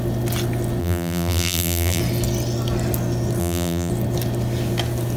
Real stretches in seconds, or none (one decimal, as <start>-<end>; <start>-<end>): 0.0-0.8; 2.0-3.4; 3.9-5.2